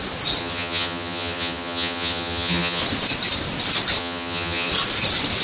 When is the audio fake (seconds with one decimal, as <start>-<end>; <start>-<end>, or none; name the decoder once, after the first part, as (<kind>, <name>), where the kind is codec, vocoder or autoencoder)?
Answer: 0.4-2.8 (vocoder, HiFi-GAN); 4.0-4.7